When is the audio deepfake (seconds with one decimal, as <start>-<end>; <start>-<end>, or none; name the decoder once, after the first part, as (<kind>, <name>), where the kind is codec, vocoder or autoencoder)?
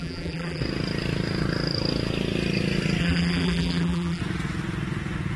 0.0-0.6 (vocoder, BigVGAN v2); 3.0-4.2